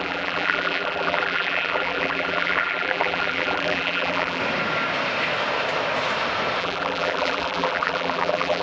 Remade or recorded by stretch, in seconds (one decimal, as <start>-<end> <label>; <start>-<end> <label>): 0.0-4.4 remade; 4.4-6.6 recorded; 6.6-8.6 remade